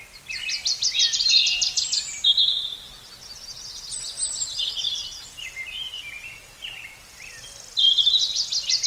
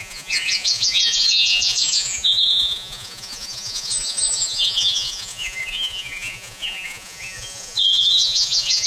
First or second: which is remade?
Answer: second